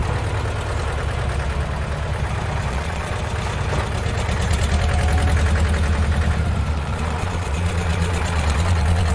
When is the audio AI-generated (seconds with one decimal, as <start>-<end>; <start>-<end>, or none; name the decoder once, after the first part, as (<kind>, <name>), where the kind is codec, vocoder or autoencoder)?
2.7-3.1 (vocoder, Vocos); 6.7-9.1

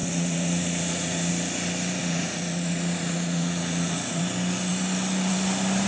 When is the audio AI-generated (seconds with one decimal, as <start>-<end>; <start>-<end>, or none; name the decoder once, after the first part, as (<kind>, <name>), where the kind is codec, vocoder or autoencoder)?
0.0-1.3 (vocoder, Vocos); 2.0-4.2

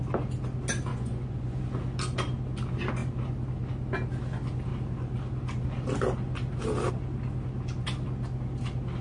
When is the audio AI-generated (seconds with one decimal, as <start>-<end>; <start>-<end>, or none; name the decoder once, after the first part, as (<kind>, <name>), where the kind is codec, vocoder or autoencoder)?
0.9-1.6 (vocoder, Vocos)